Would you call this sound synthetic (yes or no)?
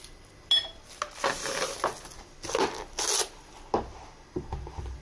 no